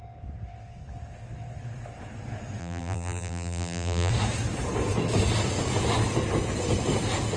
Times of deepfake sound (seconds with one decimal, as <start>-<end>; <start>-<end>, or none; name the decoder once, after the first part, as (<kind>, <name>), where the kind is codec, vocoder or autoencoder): 2.6-4.1 (vocoder, BigVGAN v2)